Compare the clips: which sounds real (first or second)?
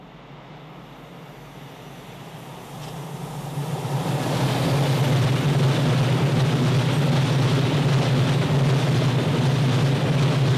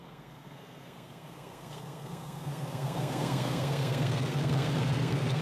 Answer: first